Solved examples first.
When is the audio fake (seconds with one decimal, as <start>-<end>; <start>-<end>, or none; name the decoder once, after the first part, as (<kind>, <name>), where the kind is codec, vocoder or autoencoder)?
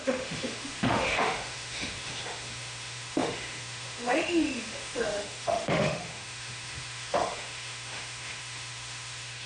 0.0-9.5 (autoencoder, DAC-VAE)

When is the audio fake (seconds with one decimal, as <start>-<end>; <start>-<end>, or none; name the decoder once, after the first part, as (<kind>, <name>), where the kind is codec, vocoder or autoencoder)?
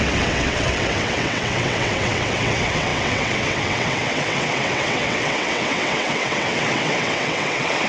0.0-7.9 (vocoder, WaveNeXt)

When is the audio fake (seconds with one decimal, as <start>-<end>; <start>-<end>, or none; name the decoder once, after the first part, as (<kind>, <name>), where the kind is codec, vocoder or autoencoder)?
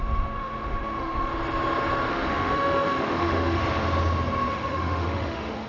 0.0-1.3 (autoencoder, DAC-VAE); 2.1-3.6; 4.5-5.7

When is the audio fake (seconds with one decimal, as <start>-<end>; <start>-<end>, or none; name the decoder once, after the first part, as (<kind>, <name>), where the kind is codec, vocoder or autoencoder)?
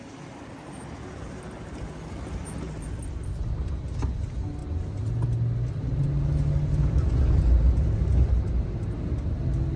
none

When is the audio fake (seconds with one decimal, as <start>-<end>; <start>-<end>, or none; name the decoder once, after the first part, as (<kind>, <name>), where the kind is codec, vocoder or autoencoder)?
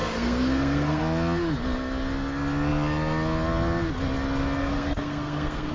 0.0-1.0 (codec, SNAC); 4.6-5.7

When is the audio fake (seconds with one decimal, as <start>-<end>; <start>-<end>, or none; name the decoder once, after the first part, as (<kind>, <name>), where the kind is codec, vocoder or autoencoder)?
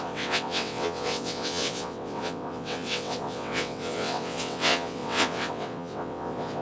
0.0-6.6 (vocoder, WaveNeXt)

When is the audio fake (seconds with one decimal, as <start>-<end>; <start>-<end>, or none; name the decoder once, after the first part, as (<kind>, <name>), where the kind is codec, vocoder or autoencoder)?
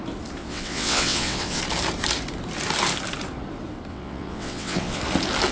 0.4-1.6 (vocoder, WaveNeXt); 3.9-5.0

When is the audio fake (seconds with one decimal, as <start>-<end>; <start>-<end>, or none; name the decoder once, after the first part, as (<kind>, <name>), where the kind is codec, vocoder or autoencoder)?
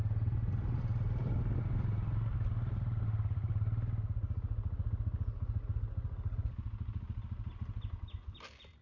none